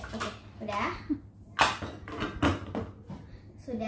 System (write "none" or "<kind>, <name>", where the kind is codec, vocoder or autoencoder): none